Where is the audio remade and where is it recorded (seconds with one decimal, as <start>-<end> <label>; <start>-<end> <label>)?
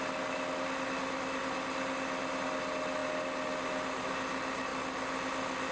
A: 0.0-5.7 recorded